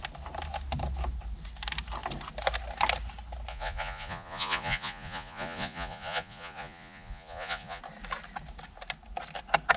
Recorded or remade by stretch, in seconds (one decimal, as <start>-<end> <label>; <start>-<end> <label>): 0.0-3.5 recorded; 3.5-7.8 remade; 7.8-9.8 recorded